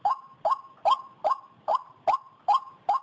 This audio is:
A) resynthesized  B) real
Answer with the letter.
B